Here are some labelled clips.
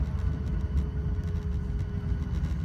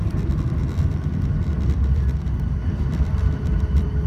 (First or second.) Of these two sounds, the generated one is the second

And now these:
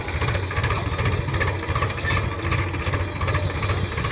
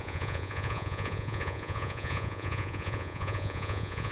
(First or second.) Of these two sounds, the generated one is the second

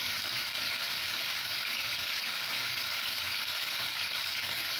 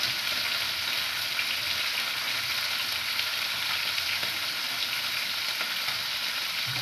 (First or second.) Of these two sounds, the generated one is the first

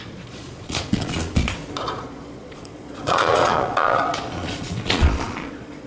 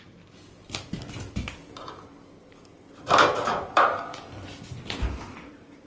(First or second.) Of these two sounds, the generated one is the first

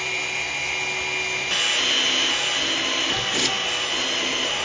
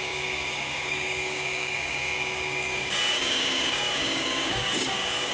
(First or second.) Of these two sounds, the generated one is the second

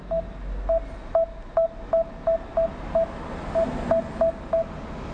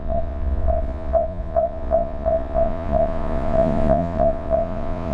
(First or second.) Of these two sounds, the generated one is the second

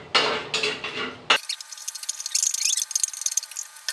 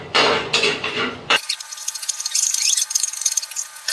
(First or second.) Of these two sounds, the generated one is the second